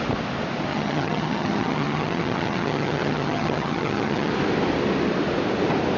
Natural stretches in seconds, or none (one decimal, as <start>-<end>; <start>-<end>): 0.0-0.7; 4.3-6.0